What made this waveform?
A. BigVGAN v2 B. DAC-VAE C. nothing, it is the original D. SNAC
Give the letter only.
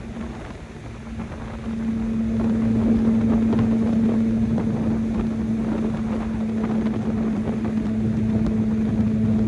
C